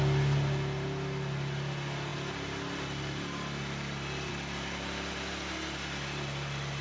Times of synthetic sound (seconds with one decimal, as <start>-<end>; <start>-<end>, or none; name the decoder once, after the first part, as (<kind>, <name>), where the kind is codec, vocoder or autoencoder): none